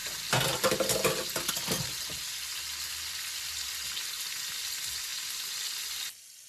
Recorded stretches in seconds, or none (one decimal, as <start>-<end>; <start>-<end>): 0.0-6.5